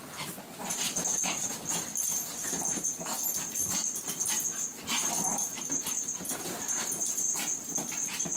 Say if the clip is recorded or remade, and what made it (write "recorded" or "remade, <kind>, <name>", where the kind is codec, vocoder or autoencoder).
recorded